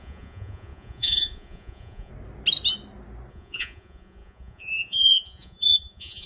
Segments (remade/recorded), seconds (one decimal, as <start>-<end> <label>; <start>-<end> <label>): 0.0-2.1 remade; 2.1-3.3 recorded; 3.3-6.3 remade